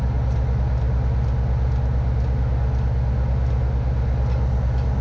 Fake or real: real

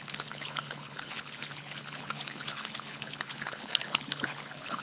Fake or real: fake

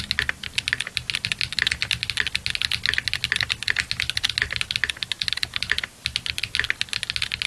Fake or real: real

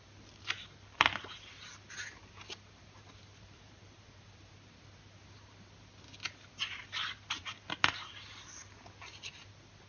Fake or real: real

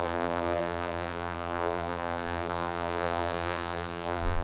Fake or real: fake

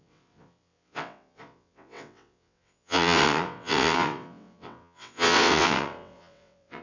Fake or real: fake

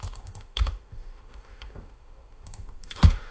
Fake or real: fake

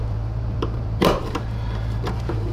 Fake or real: fake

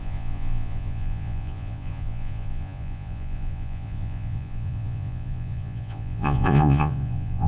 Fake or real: fake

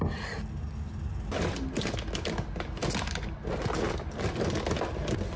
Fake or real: real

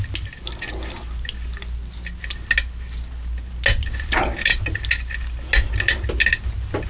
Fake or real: real